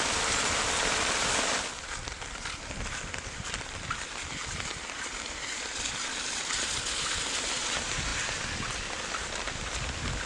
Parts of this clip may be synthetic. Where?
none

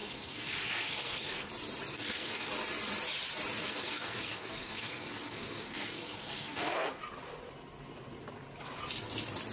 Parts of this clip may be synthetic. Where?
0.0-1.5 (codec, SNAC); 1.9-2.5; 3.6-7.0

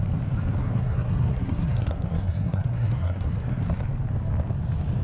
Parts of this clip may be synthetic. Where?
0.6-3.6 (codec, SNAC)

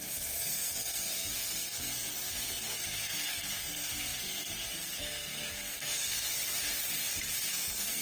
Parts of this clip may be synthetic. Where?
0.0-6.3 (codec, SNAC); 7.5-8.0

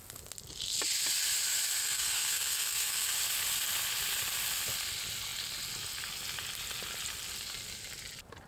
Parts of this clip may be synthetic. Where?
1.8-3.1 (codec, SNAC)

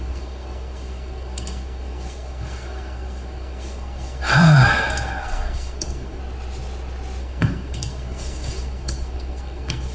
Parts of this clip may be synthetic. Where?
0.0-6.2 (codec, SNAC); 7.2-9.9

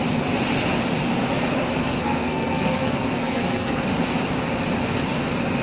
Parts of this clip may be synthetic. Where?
1.8-3.8 (codec, SNAC)

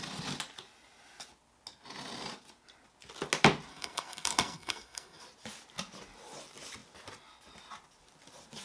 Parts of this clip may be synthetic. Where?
3.7-5.2 (codec, SNAC)